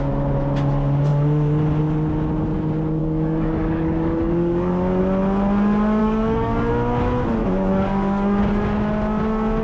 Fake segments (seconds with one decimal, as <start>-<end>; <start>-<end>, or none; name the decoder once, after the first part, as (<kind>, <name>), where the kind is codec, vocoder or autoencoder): 3.0-5.0 (codec, DAC); 6.0-6.7; 7.4-8.4